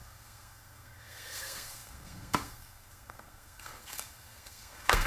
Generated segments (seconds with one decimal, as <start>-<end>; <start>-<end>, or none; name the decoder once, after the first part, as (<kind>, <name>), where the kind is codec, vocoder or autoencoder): 0.0-5.1 (codec, SNAC)